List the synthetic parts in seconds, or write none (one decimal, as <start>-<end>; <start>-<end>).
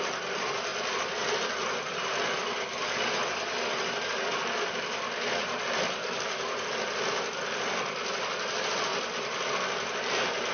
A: 6.0-6.6